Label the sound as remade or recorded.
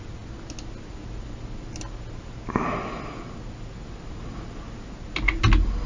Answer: recorded